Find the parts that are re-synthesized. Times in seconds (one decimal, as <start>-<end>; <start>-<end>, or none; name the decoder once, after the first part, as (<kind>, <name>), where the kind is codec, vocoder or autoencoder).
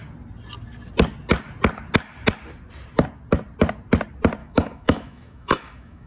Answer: 4.4-6.1 (autoencoder, DAC-VAE)